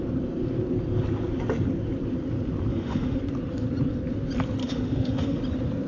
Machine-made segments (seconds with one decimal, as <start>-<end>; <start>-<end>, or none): 2.7-3.2; 4.6-5.4